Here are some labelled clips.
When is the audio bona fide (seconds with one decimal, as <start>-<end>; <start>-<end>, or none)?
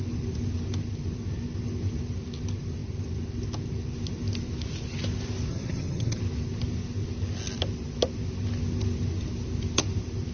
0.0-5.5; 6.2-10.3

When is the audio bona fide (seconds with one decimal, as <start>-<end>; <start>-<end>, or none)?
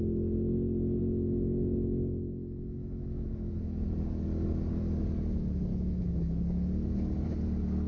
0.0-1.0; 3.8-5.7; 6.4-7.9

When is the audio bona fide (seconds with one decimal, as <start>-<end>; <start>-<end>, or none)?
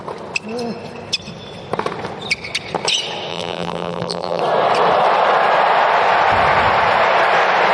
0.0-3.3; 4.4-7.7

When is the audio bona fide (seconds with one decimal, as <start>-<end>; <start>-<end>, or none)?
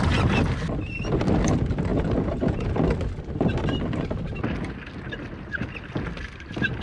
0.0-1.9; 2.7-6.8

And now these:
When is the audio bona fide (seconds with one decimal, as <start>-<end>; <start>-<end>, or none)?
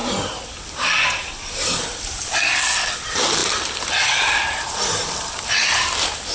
0.0-6.3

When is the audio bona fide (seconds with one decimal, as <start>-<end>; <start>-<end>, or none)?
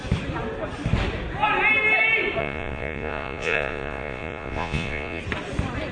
0.0-2.4; 5.2-5.9